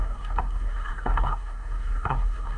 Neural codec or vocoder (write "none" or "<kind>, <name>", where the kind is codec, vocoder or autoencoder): codec, SNAC